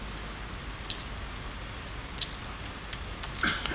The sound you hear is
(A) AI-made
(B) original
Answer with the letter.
B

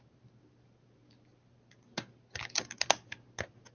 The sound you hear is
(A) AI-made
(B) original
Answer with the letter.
B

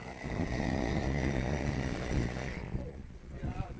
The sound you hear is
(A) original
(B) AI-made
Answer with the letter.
B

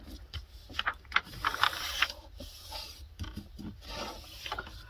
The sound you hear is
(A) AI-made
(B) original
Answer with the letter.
B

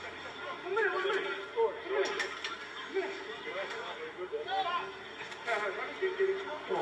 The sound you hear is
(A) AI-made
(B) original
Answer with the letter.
B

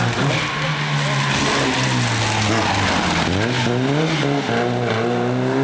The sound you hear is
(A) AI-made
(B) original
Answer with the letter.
B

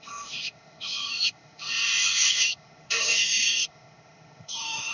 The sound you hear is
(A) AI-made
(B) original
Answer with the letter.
A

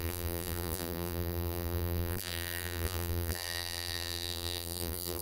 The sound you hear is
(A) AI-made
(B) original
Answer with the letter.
A